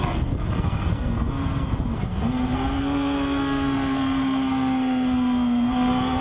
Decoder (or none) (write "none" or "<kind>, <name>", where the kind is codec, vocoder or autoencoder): codec, SNAC